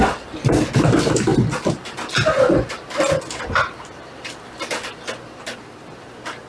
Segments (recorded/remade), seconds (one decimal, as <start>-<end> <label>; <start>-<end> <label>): 0.0-6.5 recorded